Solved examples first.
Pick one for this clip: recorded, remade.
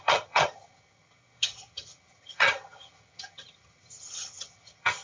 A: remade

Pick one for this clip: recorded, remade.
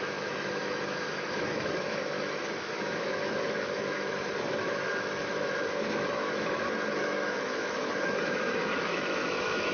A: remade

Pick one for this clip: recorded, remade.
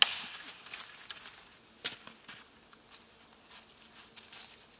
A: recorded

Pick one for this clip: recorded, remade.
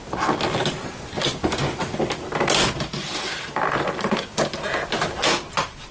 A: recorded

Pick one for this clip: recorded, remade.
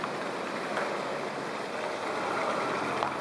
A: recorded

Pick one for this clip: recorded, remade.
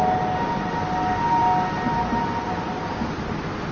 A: recorded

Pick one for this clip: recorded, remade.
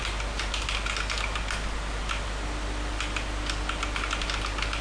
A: recorded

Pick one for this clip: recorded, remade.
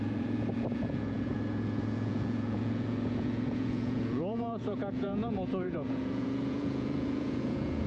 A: remade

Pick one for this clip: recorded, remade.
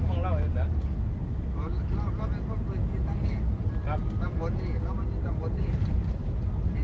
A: recorded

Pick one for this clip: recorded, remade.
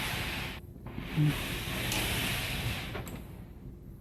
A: recorded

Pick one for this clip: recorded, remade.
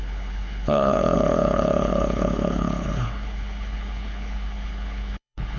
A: remade